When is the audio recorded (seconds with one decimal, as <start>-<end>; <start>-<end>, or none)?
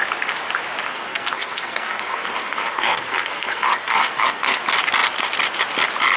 0.0-0.9; 4.6-6.2